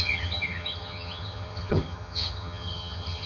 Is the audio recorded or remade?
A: remade